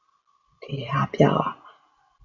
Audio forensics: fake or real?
real